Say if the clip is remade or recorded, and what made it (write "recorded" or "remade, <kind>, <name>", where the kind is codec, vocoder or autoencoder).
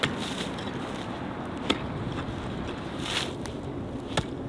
recorded